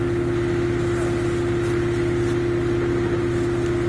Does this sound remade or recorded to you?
recorded